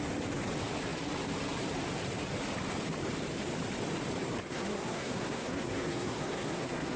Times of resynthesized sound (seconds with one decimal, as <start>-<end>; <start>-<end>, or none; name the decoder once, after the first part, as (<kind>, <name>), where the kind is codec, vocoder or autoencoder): 4.5-7.0 (codec, SNAC)